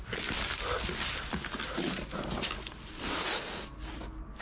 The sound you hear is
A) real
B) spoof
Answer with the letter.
A